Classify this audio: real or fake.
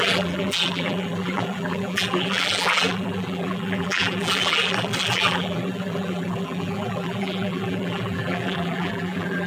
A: fake